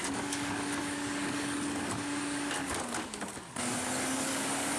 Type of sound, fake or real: fake